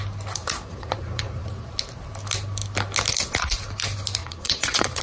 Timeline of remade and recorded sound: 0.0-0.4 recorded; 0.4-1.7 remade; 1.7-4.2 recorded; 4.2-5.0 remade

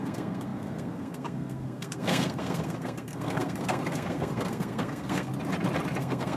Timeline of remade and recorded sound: 0.0-5.3 remade; 5.3-6.0 recorded; 6.0-6.4 remade